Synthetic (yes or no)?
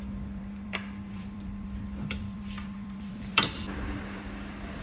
yes